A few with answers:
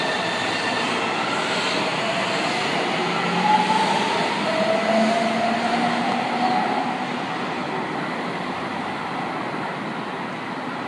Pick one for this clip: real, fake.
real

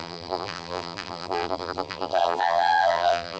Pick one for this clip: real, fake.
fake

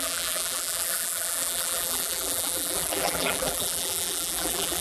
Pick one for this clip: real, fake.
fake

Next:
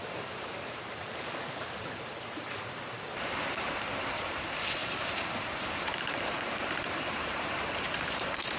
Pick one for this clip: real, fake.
fake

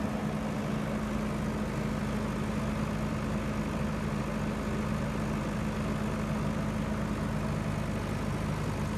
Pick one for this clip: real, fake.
real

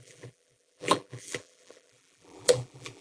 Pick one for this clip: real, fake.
fake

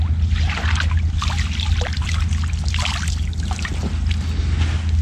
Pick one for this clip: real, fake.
real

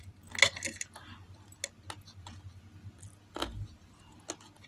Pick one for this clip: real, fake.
real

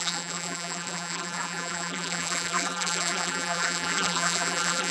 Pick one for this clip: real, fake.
fake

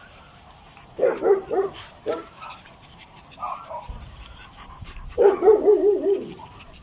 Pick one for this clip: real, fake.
fake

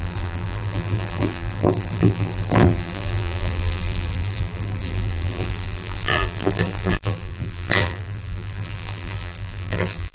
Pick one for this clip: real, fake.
fake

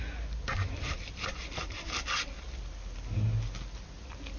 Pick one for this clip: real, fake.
real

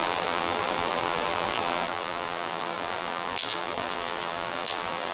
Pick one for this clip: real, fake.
fake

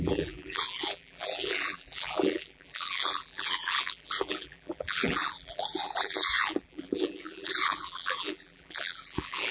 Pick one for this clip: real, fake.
fake